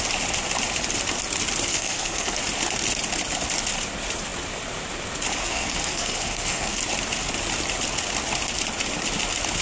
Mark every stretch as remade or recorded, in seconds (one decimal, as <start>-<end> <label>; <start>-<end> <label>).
0.0-1.7 recorded; 1.7-2.4 remade; 2.4-5.4 recorded; 5.4-6.8 remade; 6.8-9.6 recorded

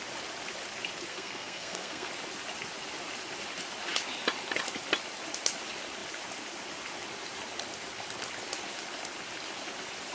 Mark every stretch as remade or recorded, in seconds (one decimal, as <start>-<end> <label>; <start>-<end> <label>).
0.0-1.1 recorded; 1.1-2.1 remade; 2.1-10.1 recorded

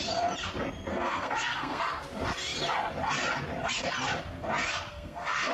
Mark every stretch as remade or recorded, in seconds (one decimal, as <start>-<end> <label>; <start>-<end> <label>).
0.0-0.9 recorded; 0.9-1.8 remade; 1.8-4.9 recorded; 4.9-5.5 remade

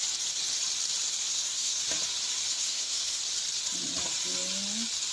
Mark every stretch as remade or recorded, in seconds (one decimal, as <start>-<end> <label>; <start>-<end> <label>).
0.0-1.3 recorded; 1.3-1.8 remade; 1.8-2.5 recorded; 2.5-3.2 remade; 3.2-5.1 recorded

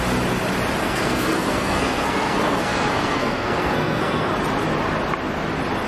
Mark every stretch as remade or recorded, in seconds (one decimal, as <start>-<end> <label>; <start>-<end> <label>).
0.0-0.8 recorded; 0.8-4.3 remade; 4.3-5.9 recorded

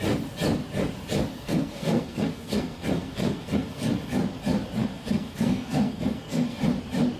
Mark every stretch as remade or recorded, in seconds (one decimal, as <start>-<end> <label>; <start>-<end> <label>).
0.0-1.3 recorded; 1.3-3.9 remade; 3.9-4.8 recorded; 4.8-6.6 remade; 6.6-7.2 recorded

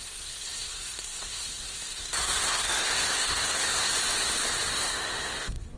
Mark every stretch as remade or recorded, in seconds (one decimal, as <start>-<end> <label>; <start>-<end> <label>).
0.0-3.9 remade; 3.9-4.7 recorded; 4.7-5.8 remade